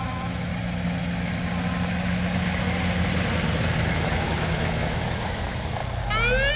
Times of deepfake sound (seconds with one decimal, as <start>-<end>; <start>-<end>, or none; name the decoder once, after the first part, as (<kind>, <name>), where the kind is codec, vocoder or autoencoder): 0.0-0.5 (autoencoder, DAC-VAE); 3.9-5.8